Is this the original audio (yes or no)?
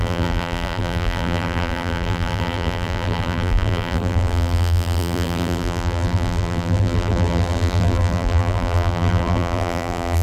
no